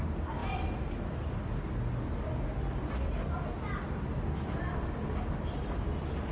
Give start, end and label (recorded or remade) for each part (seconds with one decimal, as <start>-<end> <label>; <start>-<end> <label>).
0.0-6.3 recorded